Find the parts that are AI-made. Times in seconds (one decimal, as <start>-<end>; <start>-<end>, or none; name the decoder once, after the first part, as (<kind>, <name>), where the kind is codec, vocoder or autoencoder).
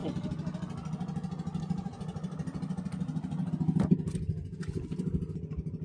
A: none